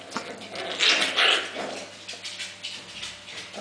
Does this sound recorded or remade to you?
recorded